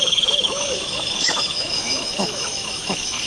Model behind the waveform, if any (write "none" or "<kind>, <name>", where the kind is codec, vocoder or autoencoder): autoencoder, DAC-VAE